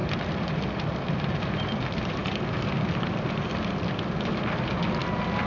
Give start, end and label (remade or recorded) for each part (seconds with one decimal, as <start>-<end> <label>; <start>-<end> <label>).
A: 0.0-5.5 recorded